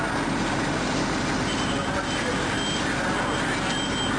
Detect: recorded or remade recorded